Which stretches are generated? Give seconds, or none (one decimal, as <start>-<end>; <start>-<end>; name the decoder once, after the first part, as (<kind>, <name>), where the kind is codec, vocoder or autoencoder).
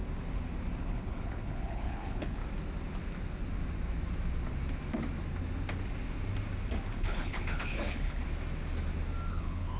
0.8-2.4 (codec, HILCodec); 6.9-8.2; 9.3-9.8